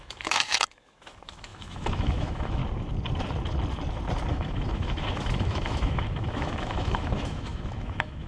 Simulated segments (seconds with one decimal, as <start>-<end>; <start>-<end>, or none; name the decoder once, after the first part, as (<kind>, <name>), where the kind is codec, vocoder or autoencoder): 0.0-2.6 (autoencoder, DAC-VAE); 4.3-8.3